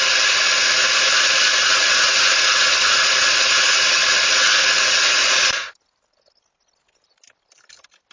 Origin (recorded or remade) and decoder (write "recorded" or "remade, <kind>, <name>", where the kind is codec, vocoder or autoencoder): recorded